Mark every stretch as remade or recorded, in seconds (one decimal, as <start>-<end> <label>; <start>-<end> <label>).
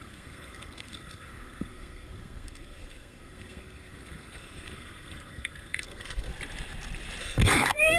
0.0-6.3 remade; 6.3-7.2 recorded; 7.2-8.0 remade